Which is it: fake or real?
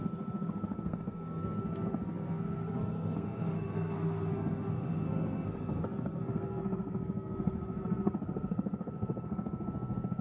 fake